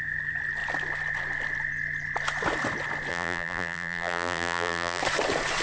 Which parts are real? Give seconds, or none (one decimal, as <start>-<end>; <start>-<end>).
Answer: 0.0-3.1; 5.0-5.6